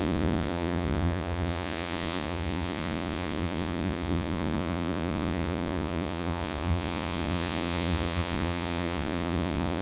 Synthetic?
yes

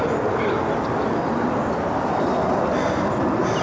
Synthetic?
no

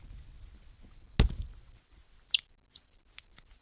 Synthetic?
no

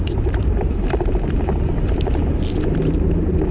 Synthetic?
yes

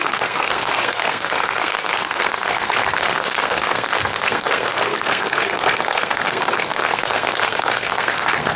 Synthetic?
yes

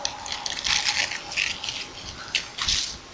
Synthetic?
no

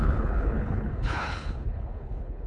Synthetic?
yes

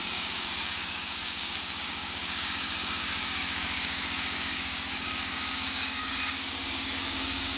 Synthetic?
yes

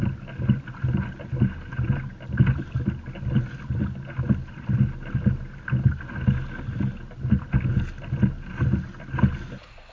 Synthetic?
no